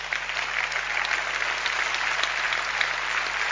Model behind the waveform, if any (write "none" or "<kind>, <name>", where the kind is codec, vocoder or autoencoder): none